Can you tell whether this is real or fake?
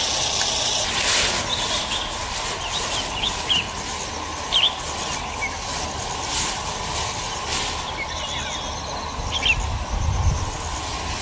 real